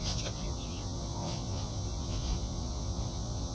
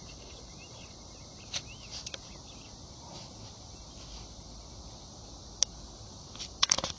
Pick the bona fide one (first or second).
second